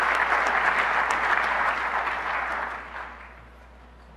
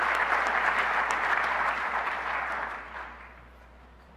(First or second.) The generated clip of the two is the second